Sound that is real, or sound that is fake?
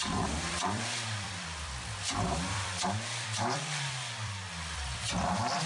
fake